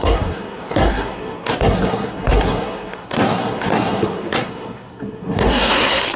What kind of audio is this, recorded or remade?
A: remade